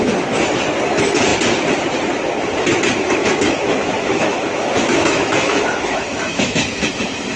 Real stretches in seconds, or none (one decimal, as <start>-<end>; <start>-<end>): 0.0-3.2